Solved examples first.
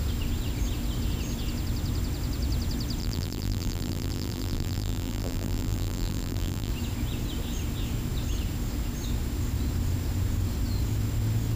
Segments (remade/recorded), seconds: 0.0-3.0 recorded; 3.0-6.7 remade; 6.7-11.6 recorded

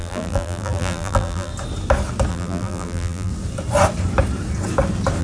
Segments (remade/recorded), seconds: 0.0-1.5 remade; 1.5-2.3 recorded; 2.3-3.3 remade; 3.3-5.2 recorded

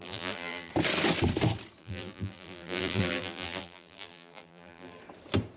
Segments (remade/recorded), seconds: 0.0-0.7 remade; 0.7-1.8 recorded; 1.8-5.0 remade; 5.0-5.6 recorded

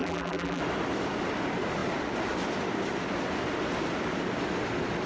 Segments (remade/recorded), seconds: 0.0-0.6 remade; 0.6-5.1 recorded

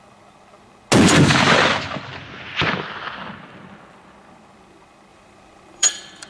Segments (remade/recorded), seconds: 0.0-5.1 recorded; 5.1-6.3 remade